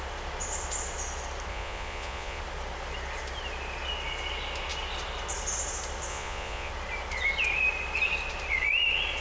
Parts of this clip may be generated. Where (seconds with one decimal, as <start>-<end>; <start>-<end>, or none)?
1.5-2.4; 6.1-6.7